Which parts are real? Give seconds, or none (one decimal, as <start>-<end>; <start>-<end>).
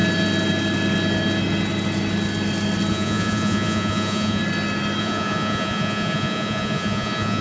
0.0-2.9; 4.4-5.0